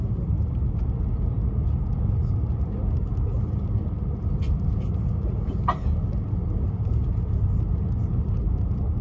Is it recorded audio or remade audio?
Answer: recorded